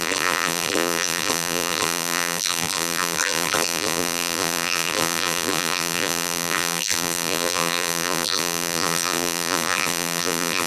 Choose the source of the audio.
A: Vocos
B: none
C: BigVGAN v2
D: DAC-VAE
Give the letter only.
C